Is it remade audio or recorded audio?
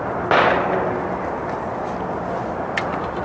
recorded